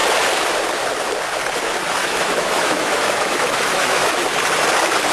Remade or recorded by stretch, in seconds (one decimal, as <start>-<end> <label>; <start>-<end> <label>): 0.0-2.0 recorded; 2.0-4.1 remade; 4.1-5.1 recorded